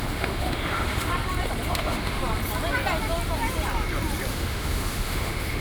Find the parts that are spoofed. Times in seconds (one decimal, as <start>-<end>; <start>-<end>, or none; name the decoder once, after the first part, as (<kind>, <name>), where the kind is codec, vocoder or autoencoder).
0.0-1.1 (autoencoder, DAC-VAE); 1.7-2.2; 4.3-5.6

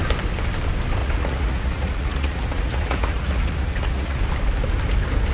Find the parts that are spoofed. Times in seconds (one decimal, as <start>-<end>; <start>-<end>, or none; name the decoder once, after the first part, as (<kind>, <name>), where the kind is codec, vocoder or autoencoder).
1.0-4.2 (vocoder, Vocos)

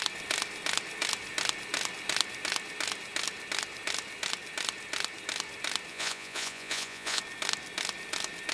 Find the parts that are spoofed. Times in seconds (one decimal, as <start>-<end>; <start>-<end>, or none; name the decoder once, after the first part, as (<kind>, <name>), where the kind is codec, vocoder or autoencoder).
5.9-7.2 (vocoder, Vocos)

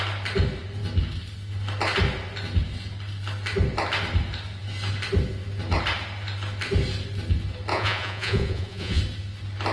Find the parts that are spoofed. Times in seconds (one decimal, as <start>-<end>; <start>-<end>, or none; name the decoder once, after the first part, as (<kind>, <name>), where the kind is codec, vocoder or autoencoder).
7.7-9.0 (vocoder, Vocos)